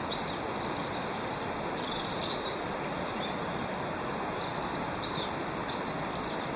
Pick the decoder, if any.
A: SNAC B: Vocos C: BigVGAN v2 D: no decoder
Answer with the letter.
D